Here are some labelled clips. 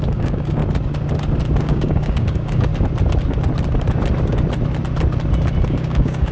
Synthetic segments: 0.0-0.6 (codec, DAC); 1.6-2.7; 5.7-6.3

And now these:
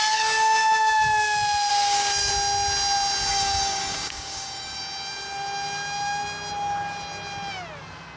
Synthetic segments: 1.7-2.3 (codec, DAC); 3.3-4.8

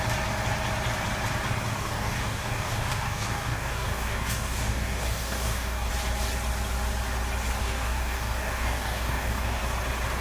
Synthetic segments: 1.7-5.9 (codec, DAC); 7.6-9.6

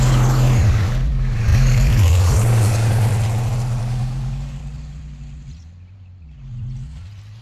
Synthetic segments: 0.0-3.1 (codec, DAC); 3.8-4.6

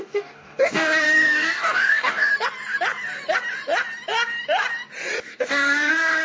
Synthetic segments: 0.0-2.3 (codec, DAC); 5.2-6.2